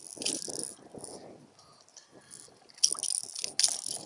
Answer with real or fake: real